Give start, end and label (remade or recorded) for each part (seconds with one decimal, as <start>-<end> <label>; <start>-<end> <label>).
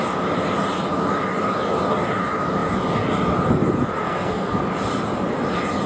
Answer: 0.0-4.0 recorded; 4.0-4.6 remade; 4.6-5.9 recorded